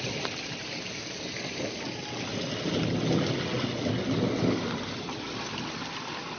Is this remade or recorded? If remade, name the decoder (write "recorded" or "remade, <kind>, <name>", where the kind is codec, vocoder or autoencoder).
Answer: recorded